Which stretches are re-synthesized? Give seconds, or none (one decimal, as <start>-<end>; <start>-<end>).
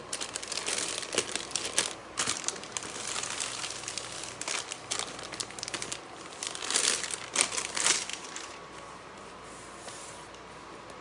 2.0-2.6; 8.1-8.7